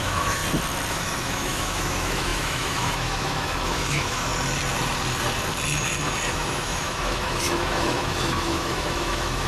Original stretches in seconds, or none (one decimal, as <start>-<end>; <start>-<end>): 0.4-0.9; 4.3-6.3

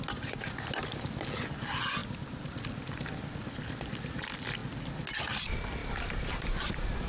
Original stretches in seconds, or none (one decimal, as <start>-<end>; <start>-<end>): 0.0-2.0; 2.6-5.8

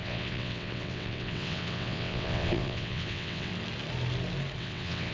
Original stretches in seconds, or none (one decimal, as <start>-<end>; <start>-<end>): 3.5-4.6

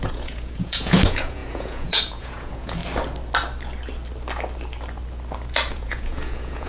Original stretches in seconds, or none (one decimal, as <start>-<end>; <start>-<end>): 2.8-5.7

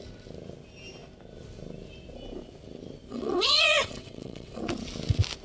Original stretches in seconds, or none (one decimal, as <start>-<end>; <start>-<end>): 0.0-3.1; 4.6-5.4

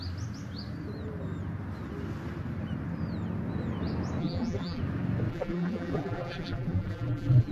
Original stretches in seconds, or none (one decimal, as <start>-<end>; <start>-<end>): 0.0-4.2; 4.8-5.3